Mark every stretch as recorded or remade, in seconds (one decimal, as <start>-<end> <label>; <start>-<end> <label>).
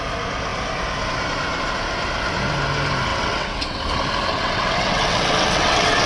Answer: 0.0-3.1 recorded; 3.1-3.8 remade; 3.8-4.3 recorded; 4.3-6.1 remade